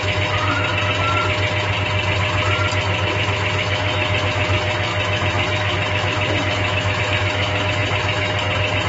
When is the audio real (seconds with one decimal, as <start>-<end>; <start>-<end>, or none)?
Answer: 0.7-3.1